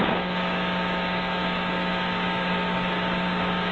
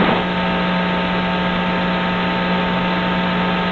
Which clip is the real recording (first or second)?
second